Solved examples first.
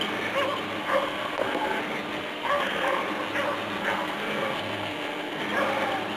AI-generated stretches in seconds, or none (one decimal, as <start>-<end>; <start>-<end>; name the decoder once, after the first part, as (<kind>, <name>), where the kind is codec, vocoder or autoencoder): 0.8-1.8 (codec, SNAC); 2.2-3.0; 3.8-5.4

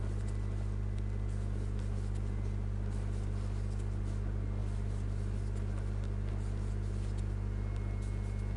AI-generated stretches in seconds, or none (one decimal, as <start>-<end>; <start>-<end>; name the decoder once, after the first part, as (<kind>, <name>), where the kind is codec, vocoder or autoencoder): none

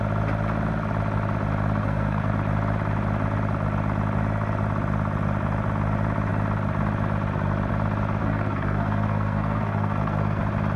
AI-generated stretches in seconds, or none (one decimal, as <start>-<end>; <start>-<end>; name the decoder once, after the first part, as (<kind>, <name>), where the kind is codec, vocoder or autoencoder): 1.8-2.3 (codec, SNAC); 8.2-10.4

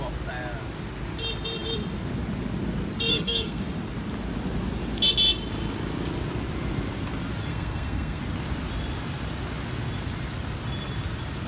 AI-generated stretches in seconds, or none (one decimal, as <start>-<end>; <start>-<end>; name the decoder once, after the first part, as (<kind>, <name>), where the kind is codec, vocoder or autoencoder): 3.1-3.6 (codec, SNAC); 7.5-8.2

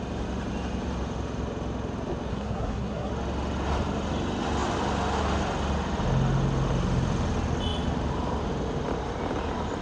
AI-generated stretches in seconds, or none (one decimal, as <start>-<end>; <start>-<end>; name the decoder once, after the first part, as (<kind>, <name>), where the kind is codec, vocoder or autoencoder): 2.3-3.1 (codec, SNAC)